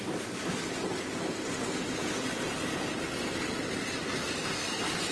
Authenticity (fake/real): real